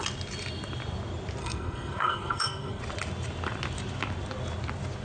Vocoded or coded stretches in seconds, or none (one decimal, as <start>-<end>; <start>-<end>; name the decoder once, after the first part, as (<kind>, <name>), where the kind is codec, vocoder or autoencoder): 1.4-2.8 (codec, SNAC)